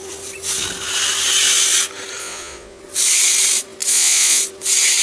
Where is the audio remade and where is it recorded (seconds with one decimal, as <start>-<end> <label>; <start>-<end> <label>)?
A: 0.0-2.2 recorded; 2.2-2.8 remade; 2.8-3.9 recorded; 3.9-4.4 remade; 4.4-5.0 recorded